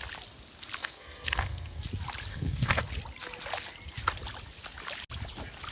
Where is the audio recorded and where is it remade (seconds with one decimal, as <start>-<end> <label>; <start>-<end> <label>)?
0.0-0.8 recorded; 0.8-1.8 remade; 1.8-2.3 recorded; 2.3-2.8 remade; 2.8-5.7 recorded